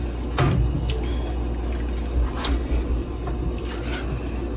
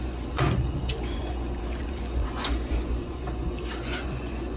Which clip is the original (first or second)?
first